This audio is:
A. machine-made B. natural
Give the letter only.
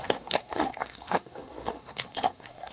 A